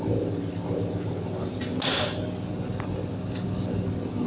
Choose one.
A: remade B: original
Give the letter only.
B